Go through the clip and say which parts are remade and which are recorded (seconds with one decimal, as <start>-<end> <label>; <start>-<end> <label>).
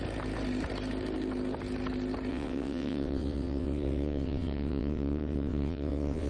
0.0-2.3 recorded; 2.3-6.3 remade